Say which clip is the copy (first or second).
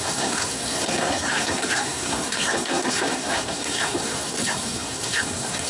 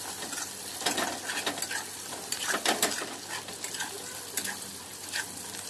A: first